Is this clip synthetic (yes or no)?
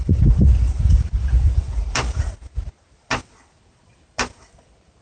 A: no